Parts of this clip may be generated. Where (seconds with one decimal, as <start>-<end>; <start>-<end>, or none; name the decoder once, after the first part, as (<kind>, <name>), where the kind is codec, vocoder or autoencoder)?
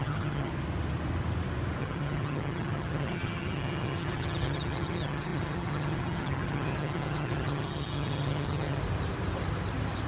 0.0-0.5 (vocoder, HiFi-GAN); 1.8-8.8